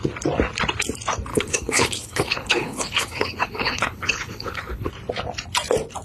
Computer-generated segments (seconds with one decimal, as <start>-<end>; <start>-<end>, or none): 1.3-4.9